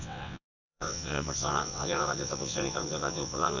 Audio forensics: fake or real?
fake